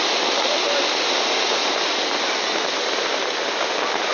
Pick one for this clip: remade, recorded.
recorded